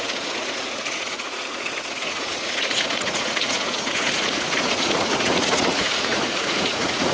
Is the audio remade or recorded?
remade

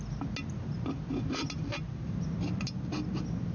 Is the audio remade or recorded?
recorded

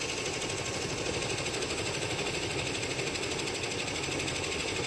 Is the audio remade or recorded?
recorded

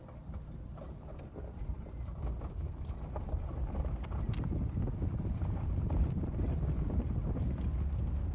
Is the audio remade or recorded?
recorded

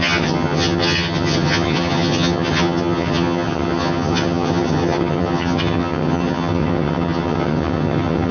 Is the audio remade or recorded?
remade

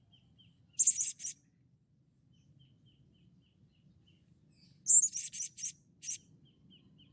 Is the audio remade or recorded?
recorded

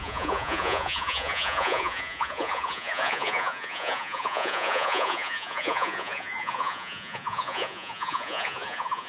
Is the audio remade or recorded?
remade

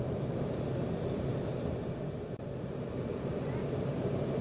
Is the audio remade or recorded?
recorded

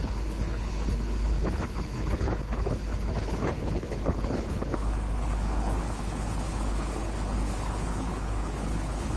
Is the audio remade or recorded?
remade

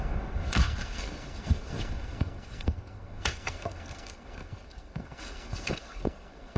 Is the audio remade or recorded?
remade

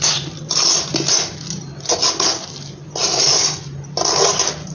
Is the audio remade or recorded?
recorded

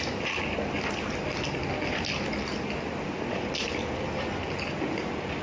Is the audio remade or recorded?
recorded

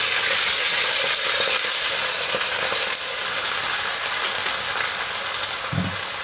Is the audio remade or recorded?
recorded